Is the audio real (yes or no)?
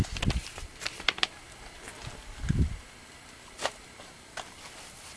yes